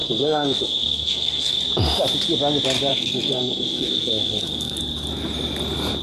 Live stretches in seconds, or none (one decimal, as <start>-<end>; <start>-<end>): 1.6-2.9; 4.8-6.0